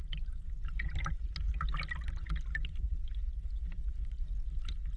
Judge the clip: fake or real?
real